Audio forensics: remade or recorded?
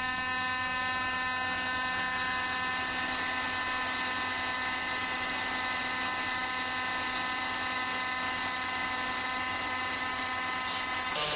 recorded